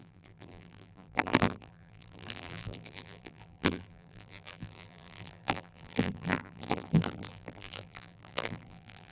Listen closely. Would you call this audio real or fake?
fake